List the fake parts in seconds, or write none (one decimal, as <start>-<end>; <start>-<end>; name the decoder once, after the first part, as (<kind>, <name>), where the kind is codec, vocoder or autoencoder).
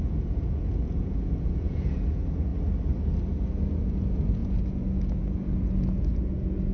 0.0-2.5 (vocoder, Vocos); 3.7-6.7